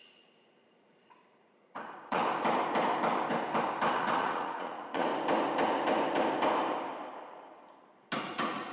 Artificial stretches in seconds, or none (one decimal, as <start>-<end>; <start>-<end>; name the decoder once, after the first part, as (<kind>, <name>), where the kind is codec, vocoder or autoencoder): 0.0-2.2 (vocoder, Vocos); 4.0-5.1; 8.2-8.7